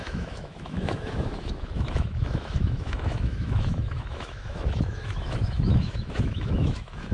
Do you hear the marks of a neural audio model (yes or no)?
yes